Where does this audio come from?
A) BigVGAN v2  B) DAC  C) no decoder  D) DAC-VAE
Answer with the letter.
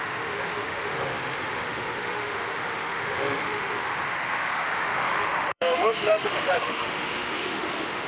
D